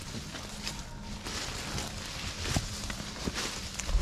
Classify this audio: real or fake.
real